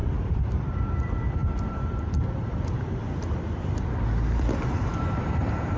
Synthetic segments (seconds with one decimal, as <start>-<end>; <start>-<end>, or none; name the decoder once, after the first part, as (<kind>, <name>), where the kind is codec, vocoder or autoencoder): 0.0-5.8 (vocoder, BigVGAN v2)